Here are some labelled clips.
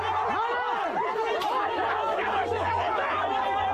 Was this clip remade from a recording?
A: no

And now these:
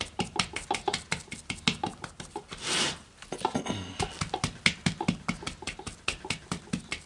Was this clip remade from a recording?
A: no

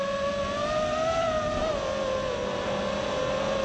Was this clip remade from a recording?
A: no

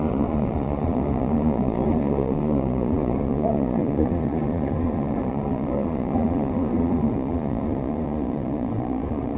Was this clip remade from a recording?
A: yes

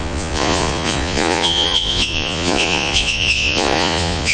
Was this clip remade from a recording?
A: yes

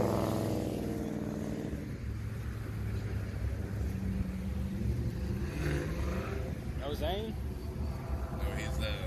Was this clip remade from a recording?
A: no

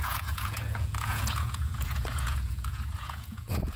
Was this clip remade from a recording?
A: yes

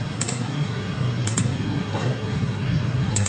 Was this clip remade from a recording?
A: yes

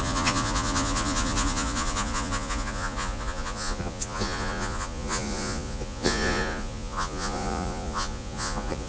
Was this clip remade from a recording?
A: yes